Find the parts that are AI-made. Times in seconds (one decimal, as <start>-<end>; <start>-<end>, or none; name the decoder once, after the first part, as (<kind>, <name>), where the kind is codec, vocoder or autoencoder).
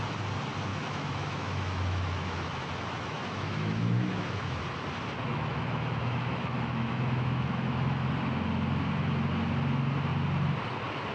0.7-4.6 (autoencoder, DAC-VAE); 5.3-8.1